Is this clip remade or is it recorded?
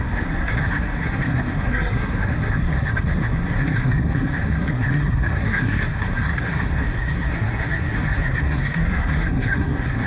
remade